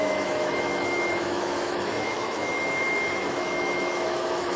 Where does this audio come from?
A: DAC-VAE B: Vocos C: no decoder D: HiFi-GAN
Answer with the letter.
A